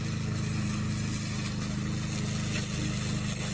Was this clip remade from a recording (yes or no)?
no